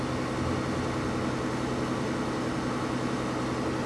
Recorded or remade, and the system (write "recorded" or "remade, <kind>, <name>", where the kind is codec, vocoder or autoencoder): recorded